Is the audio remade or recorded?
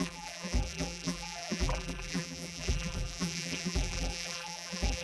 remade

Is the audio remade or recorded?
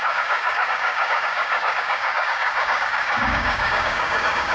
remade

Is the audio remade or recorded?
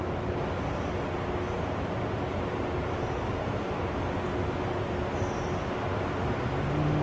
recorded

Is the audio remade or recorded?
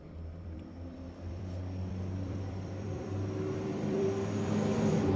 remade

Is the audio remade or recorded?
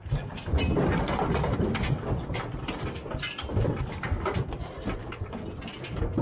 recorded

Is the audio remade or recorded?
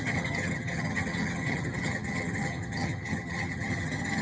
remade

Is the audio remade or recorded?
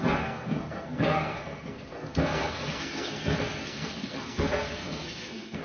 remade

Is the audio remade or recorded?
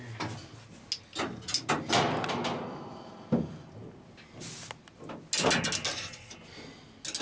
recorded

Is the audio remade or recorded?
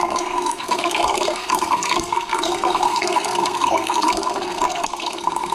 remade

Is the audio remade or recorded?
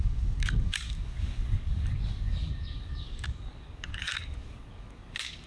remade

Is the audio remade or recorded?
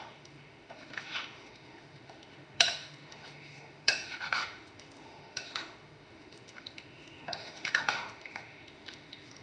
remade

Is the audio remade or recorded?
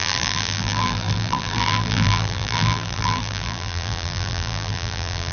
remade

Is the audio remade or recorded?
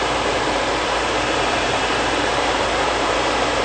remade